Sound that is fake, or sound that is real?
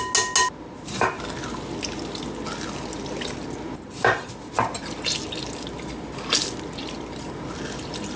real